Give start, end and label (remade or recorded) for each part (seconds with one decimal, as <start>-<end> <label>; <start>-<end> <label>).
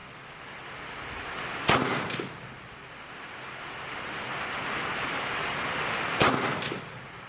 0.0-7.3 recorded